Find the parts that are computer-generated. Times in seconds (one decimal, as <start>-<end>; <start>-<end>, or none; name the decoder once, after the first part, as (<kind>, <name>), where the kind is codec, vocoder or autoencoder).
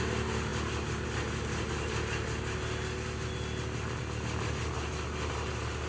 none